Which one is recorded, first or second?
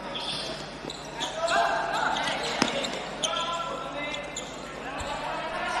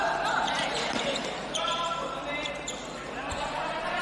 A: first